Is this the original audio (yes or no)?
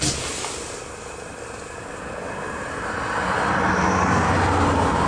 yes